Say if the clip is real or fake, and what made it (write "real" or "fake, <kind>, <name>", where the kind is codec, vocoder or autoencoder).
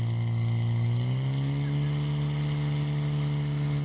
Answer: real